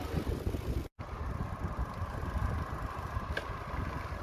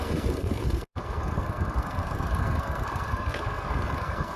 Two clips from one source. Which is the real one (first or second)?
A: first